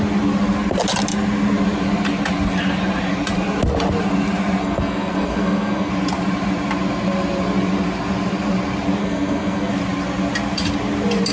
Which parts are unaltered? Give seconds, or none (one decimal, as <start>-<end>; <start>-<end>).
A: 0.0-4.6; 5.9-9.0; 9.7-11.3